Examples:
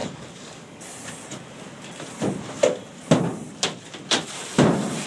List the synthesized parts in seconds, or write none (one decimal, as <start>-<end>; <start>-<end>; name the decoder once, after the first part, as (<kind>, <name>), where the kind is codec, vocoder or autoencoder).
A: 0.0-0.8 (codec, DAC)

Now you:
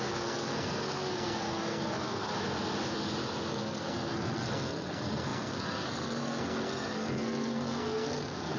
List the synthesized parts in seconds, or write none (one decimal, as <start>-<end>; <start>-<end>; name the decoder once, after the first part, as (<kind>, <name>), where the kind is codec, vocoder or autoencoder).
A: 0.0-2.3 (codec, SNAC); 3.5-8.6

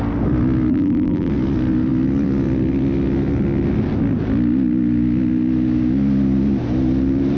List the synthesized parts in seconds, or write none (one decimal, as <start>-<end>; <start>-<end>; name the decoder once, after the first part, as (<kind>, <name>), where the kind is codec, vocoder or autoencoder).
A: 0.7-1.3 (vocoder, BigVGAN v2)